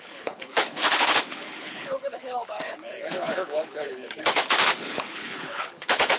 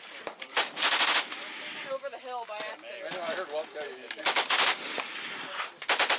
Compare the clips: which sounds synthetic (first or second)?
first